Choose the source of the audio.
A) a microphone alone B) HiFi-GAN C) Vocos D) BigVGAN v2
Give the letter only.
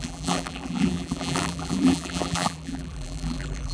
D